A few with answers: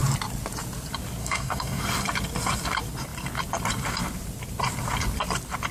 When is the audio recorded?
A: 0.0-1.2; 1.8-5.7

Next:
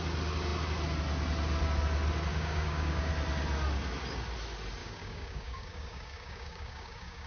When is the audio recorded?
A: 0.0-2.3; 3.1-4.8

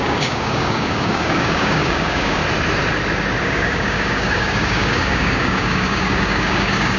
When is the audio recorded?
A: 2.4-3.4

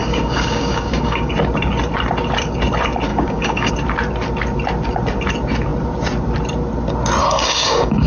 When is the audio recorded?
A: 1.3-3.1; 3.7-7.2

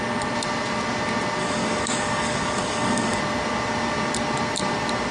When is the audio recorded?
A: 0.0-1.4; 3.2-5.1

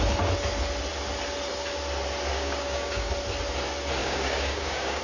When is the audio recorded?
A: 0.0-2.3; 3.1-4.0

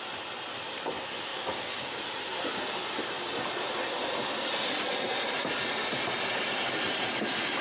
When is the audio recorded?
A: 0.0-1.3; 2.0-7.6

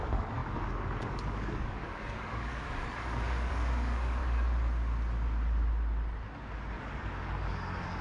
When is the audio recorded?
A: 4.2-6.8